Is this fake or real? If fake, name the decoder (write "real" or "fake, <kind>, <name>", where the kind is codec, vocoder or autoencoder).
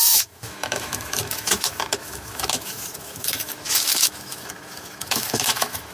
fake, autoencoder, DAC-VAE